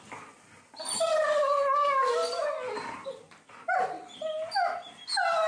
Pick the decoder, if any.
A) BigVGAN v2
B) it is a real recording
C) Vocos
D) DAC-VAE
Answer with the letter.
B